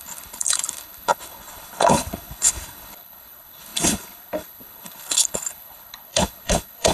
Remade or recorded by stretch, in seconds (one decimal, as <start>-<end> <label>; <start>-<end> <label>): 0.0-6.9 remade